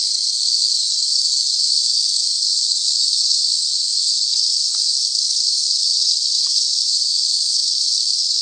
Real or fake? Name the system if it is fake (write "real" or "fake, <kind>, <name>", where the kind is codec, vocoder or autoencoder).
fake, codec, SNAC